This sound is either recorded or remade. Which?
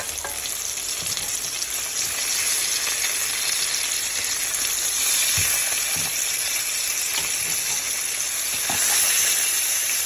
recorded